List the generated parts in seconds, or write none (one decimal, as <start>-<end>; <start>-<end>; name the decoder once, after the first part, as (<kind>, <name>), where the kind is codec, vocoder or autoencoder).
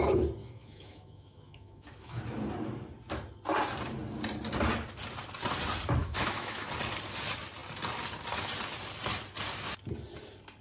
0.4-2.2 (autoencoder, DAC-VAE); 6.0-6.7